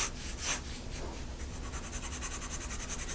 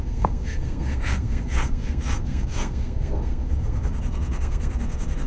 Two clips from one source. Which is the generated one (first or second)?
second